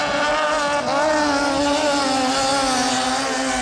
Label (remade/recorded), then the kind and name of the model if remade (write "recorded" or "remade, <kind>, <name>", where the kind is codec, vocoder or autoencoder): recorded